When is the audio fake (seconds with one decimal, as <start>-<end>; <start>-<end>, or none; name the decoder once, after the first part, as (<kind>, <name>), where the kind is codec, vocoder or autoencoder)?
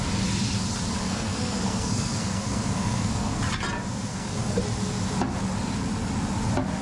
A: 1.0-3.4 (codec, SNAC); 4.1-4.6